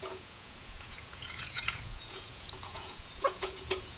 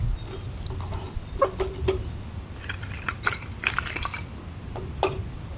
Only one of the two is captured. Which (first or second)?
second